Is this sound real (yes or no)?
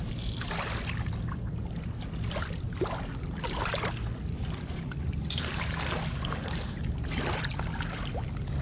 yes